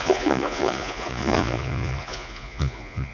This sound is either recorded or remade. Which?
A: remade